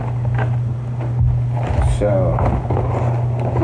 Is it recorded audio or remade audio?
recorded